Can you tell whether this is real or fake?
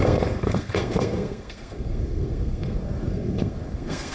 fake